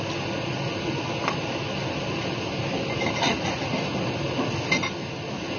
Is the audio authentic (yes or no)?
yes